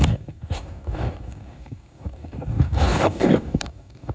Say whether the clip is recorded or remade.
remade